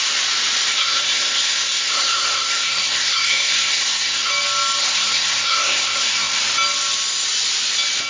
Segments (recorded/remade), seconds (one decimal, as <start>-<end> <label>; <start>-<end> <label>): 0.0-0.7 recorded; 0.7-4.3 remade; 4.3-4.8 recorded; 4.8-6.4 remade; 6.4-8.1 recorded